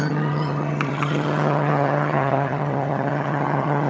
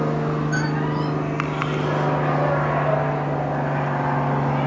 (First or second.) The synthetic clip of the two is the first